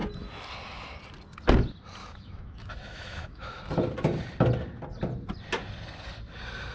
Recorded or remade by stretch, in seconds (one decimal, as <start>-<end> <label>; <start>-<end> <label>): 0.0-2.0 recorded; 2.0-3.6 remade; 3.6-6.7 recorded